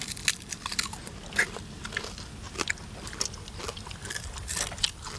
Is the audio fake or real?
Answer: real